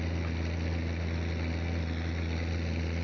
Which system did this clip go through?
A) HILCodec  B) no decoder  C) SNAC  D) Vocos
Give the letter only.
B